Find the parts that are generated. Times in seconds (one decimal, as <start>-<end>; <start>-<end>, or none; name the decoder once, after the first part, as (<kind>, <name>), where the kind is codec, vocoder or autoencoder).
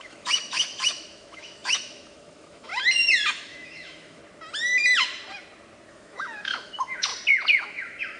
0.0-2.7 (autoencoder, DAC-VAE); 3.3-4.2; 5.9-7.1; 7.6-8.2